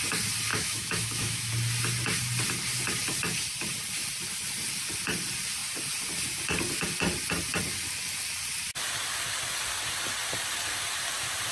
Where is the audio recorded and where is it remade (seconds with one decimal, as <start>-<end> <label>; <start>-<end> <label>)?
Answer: 0.0-0.5 recorded; 0.5-1.5 remade; 1.5-11.5 recorded